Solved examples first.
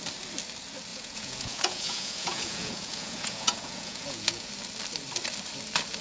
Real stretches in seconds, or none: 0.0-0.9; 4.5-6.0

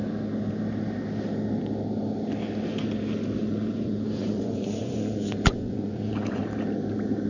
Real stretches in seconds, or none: 0.0-3.4; 6.4-7.3

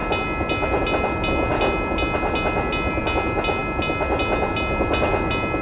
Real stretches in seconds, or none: 0.0-5.6

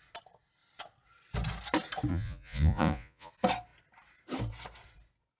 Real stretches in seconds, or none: 0.0-2.1; 3.3-5.4

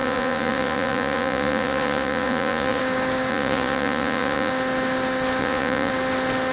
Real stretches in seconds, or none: 2.8-3.3; 4.5-5.4; 5.9-6.5

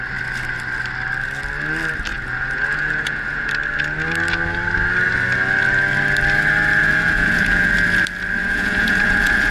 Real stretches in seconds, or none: 0.0-2.1; 3.5-6.8; 7.7-8.4

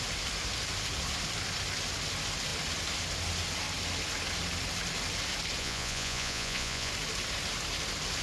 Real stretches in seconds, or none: 0.0-5.6; 6.9-8.2